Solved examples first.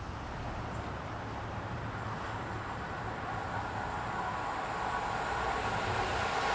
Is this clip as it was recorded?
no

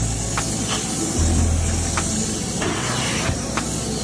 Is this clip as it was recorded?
yes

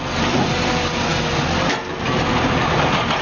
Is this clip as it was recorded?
yes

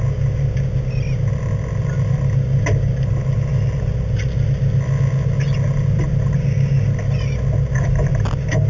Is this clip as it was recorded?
yes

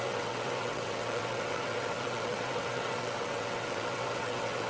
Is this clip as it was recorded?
no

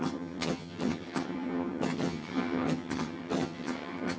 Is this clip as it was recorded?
no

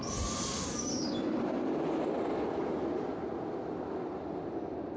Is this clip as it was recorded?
yes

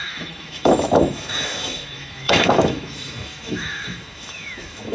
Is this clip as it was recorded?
no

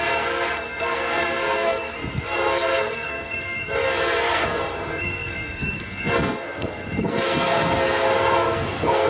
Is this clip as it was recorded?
no